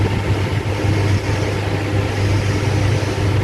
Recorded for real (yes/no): yes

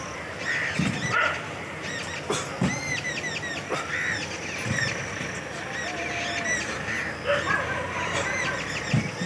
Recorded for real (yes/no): yes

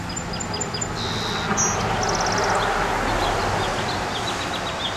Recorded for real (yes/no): yes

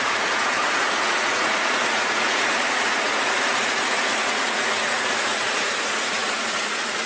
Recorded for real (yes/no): no